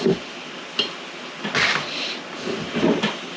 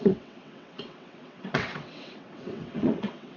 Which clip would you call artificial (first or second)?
second